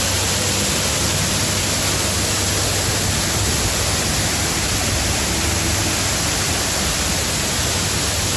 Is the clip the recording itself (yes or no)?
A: yes